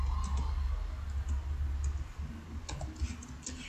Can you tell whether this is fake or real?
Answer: real